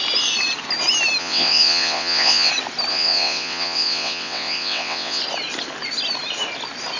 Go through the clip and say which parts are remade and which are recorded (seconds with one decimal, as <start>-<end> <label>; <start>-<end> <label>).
0.0-1.2 recorded; 1.2-2.5 remade; 2.5-2.9 recorded; 2.9-5.2 remade; 5.2-7.0 recorded